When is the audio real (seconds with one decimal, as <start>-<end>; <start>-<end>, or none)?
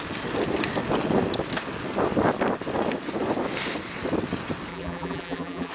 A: 0.0-4.7